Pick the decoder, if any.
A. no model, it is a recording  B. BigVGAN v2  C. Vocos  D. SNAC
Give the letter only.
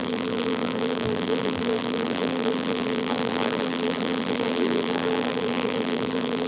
B